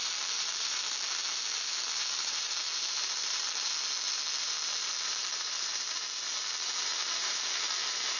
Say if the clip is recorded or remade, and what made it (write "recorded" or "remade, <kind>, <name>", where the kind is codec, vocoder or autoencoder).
remade, vocoder, BigVGAN v2